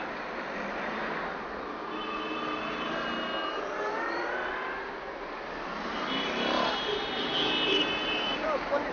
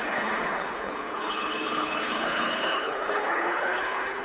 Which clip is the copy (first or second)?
second